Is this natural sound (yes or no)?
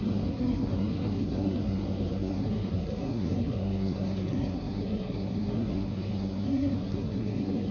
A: no